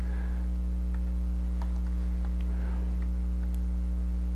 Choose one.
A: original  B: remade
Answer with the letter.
A